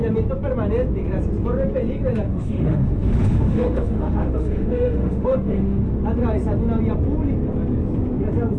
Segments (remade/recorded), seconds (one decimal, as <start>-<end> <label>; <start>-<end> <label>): 0.0-2.3 recorded; 2.3-5.9 remade; 5.9-8.6 recorded